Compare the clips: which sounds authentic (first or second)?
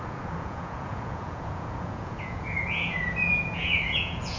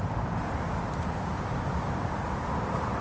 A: second